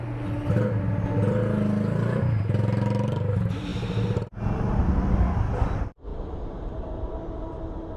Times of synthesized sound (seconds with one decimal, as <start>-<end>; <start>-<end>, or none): 6.1-7.6